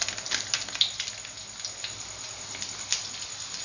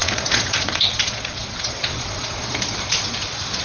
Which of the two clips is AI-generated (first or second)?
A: second